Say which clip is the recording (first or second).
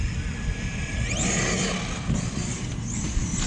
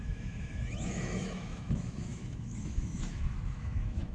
first